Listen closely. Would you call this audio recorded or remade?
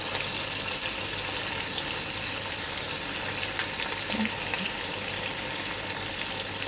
recorded